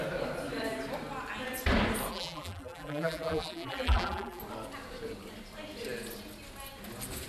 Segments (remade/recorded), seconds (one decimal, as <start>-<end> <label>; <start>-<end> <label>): 0.0-2.1 recorded; 2.1-4.4 remade; 4.4-7.3 recorded